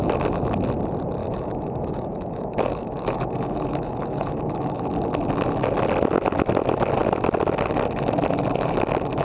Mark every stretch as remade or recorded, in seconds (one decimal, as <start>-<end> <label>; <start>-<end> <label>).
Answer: 0.0-1.2 recorded; 1.2-4.8 remade; 4.8-9.2 recorded